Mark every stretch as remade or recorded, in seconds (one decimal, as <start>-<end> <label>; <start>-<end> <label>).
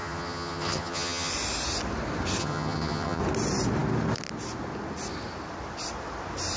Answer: 0.0-1.3 remade; 1.3-2.4 recorded; 2.4-3.2 remade; 3.2-6.6 recorded